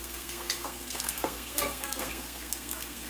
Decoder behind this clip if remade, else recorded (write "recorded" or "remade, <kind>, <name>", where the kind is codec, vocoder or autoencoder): remade, codec, SNAC